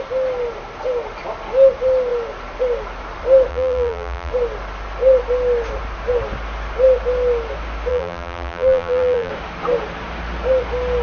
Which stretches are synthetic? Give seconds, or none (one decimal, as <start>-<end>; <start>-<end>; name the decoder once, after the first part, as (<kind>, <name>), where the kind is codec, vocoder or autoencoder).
3.5-4.3 (vocoder, BigVGAN v2); 7.9-9.3